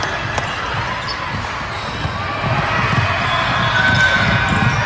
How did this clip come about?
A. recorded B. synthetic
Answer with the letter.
A